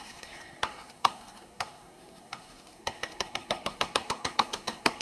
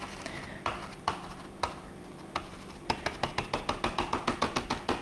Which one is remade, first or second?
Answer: first